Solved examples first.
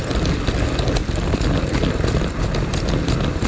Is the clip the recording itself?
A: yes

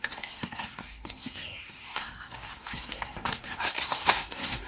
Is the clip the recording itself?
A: no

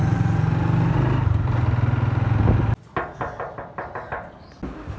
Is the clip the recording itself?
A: yes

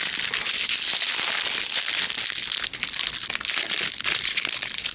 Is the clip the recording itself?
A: yes